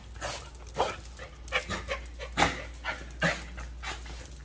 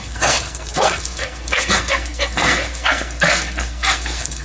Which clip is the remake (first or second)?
second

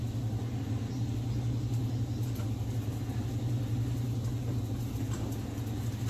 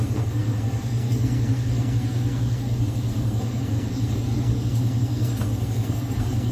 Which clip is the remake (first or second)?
second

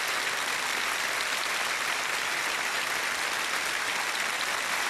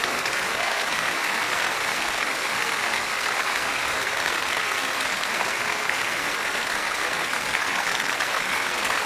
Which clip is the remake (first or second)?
second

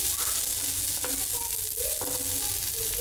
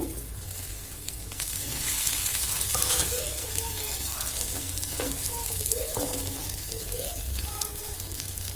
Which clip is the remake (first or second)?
second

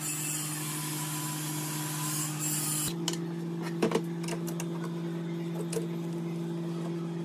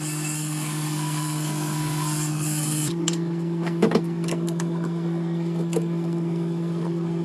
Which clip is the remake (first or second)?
second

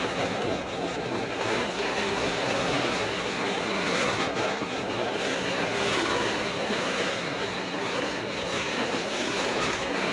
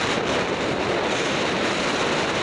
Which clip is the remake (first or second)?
first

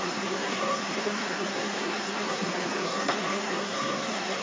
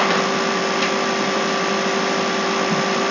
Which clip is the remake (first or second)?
first